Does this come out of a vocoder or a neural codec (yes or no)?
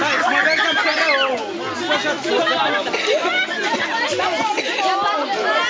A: no